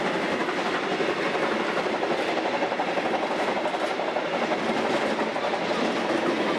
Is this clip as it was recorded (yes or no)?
yes